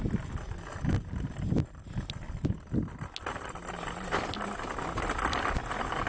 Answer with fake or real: real